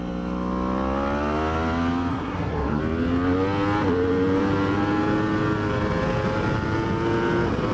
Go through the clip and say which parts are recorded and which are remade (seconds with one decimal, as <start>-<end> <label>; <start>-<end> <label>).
0.0-2.1 recorded; 2.1-2.8 remade; 2.8-7.7 recorded